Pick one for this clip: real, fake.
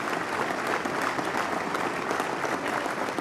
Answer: real